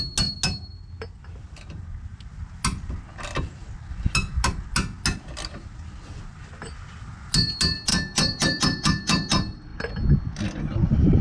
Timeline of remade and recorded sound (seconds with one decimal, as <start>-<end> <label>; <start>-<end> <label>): 0.0-7.9 recorded; 7.9-8.6 remade; 8.6-11.2 recorded